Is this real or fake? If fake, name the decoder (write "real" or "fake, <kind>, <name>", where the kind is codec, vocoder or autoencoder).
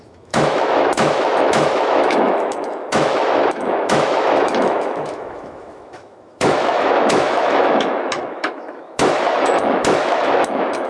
fake, autoencoder, DAC-VAE